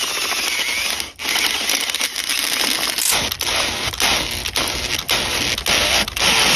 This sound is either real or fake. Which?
real